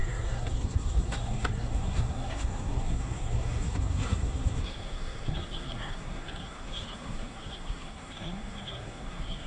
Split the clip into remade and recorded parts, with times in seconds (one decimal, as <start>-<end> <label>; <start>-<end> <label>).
0.0-9.5 remade